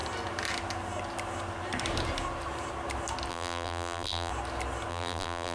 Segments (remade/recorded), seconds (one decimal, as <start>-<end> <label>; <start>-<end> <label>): 0.0-3.3 recorded; 3.3-4.3 remade; 4.3-4.9 recorded; 4.9-5.5 remade